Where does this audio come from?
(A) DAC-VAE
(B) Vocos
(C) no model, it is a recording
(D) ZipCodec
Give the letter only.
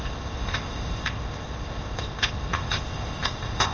D